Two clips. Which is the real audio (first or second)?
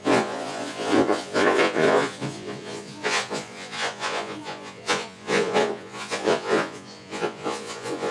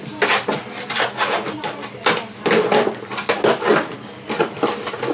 second